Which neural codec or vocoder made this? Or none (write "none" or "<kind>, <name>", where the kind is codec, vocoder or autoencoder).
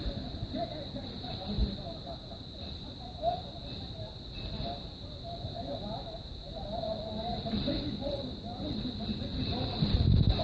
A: none